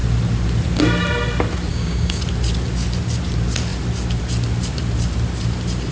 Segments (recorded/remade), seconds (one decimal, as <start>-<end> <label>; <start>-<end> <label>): 0.0-1.7 recorded; 1.7-2.2 remade; 2.2-5.9 recorded